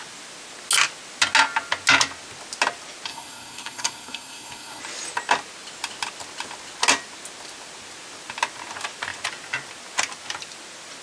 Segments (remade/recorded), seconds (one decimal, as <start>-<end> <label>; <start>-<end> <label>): 0.0-3.1 recorded; 3.1-4.8 remade; 4.8-11.0 recorded